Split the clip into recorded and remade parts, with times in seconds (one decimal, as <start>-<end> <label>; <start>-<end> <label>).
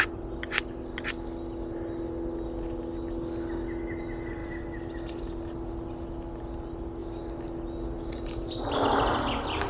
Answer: 0.0-9.7 recorded